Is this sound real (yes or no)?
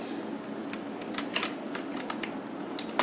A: yes